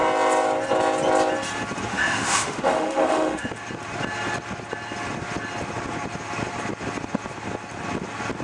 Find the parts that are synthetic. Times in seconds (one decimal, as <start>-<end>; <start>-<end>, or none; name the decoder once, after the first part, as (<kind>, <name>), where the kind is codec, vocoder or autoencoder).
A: 1.9-3.5 (autoencoder, DAC-VAE)

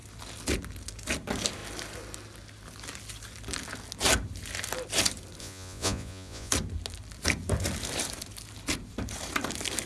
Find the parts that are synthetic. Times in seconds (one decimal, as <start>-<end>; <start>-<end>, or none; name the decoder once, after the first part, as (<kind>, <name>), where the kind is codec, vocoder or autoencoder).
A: 5.4-6.5 (vocoder, Vocos)

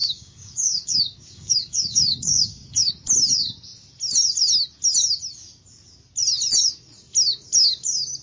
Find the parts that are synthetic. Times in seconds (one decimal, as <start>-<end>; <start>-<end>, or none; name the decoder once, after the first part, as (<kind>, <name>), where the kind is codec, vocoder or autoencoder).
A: 0.0-2.9 (codec, DAC)

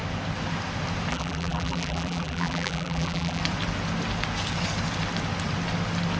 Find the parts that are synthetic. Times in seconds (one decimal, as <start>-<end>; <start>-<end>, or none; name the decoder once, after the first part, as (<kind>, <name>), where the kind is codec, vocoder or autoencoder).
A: 1.1-3.4 (vocoder, BigVGAN v2)

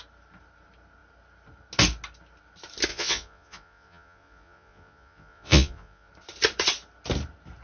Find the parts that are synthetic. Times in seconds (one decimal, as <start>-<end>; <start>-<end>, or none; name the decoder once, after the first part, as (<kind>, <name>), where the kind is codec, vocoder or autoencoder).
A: 2.9-6.1 (vocoder, Vocos)

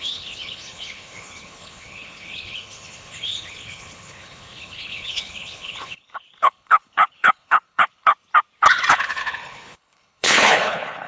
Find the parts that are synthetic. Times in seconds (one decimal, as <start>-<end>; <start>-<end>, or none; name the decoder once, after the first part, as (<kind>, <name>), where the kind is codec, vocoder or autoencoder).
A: 0.0-8.1 (codec, HILCodec); 8.9-11.1

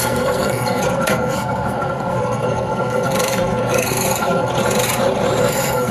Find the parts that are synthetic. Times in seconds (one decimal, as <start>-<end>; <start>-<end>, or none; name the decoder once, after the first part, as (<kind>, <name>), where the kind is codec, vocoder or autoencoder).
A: 0.0-4.5 (codec, SNAC); 5.4-5.9